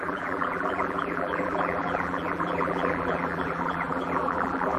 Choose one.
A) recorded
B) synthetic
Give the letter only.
B